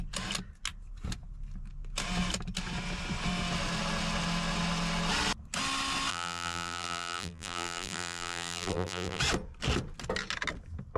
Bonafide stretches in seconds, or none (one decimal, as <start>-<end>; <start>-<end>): 0.0-6.1; 9.2-11.0